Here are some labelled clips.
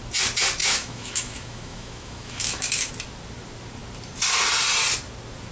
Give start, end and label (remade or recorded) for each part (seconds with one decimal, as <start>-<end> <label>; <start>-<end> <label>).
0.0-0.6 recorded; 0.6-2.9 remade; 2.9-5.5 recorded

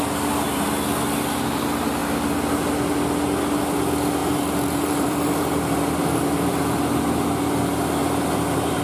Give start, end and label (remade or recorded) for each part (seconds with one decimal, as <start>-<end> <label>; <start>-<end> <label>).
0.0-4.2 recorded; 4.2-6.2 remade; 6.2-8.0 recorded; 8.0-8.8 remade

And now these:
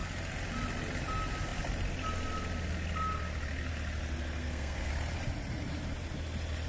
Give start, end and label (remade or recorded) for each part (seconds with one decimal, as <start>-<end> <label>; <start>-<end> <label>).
0.0-4.4 recorded; 4.4-4.9 remade; 4.9-6.7 recorded

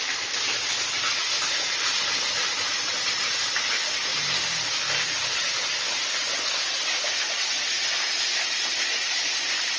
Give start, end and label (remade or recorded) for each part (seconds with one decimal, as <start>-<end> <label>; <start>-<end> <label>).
0.0-9.8 recorded

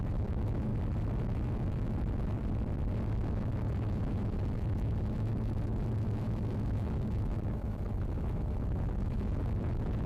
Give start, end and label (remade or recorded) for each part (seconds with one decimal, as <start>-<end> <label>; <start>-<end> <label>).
0.0-0.7 remade; 0.7-1.2 recorded; 1.2-2.4 remade; 2.4-3.2 recorded; 3.2-10.1 remade

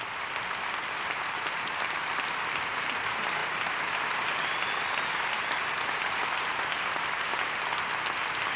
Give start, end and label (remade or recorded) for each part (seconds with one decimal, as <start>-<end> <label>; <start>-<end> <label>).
0.0-8.6 recorded